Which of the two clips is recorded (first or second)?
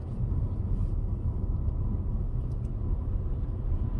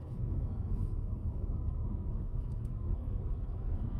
first